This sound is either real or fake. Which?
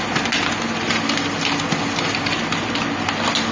real